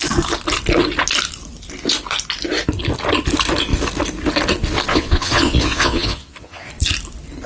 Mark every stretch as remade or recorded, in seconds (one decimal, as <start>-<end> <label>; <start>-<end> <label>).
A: 0.0-4.9 recorded; 4.9-6.7 remade; 6.7-7.5 recorded